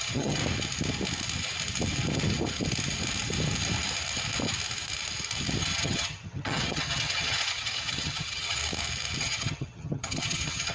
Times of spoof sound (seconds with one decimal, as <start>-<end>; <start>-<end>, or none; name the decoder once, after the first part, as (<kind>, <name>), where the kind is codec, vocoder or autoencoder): 0.0-0.4 (vocoder, HiFi-GAN); 5.6-8.6; 9.2-10.7